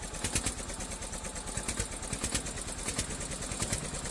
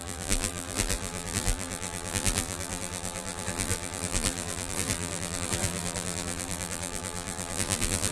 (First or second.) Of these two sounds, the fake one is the second